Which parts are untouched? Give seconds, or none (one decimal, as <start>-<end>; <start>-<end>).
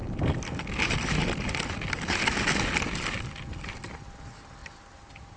0.0-4.6